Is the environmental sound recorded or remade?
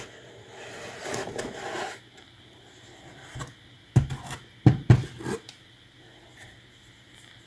recorded